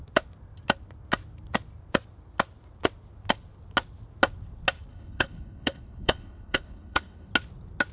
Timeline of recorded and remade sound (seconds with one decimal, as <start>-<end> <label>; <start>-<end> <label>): 0.0-4.9 recorded; 4.9-7.3 remade; 7.3-7.9 recorded